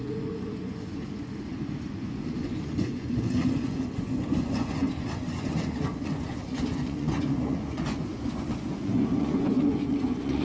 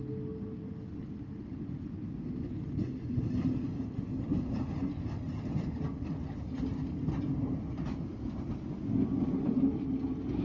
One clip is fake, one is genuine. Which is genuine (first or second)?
second